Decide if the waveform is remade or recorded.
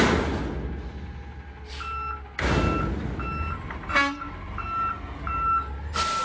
recorded